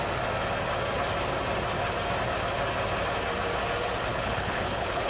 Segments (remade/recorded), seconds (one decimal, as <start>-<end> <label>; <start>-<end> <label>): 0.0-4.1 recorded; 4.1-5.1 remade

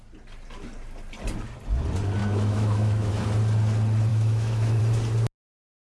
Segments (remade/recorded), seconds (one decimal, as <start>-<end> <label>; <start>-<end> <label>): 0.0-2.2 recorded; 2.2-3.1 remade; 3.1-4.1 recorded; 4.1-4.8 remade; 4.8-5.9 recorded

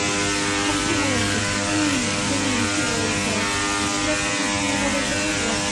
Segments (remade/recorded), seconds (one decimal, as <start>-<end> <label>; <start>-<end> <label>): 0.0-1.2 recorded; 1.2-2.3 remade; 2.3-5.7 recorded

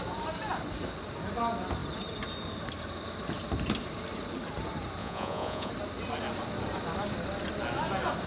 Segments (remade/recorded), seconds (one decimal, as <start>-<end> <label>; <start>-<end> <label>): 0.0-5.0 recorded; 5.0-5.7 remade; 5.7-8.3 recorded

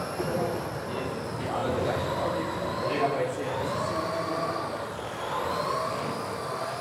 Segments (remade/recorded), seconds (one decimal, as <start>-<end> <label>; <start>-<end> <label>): 0.0-6.8 recorded